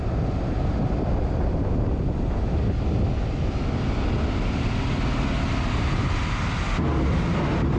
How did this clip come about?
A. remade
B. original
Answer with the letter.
B